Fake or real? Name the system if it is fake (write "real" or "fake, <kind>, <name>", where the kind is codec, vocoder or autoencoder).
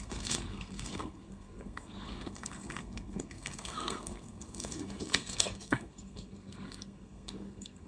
fake, codec, SNAC